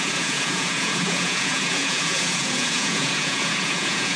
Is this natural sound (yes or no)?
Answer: no